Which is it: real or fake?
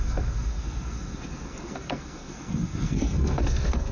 fake